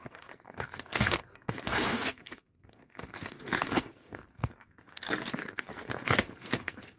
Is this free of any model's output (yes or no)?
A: no